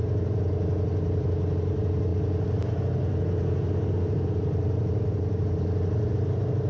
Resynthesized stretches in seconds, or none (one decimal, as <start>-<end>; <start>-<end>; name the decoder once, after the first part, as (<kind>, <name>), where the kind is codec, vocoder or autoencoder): none